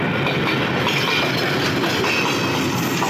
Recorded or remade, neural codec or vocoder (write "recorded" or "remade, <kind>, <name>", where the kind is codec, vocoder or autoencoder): recorded